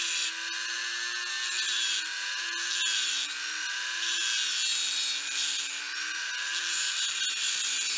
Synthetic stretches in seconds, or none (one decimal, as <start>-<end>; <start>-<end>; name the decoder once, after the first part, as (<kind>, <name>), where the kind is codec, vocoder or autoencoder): none